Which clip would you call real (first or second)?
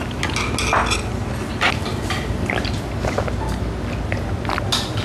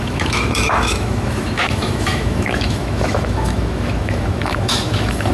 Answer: first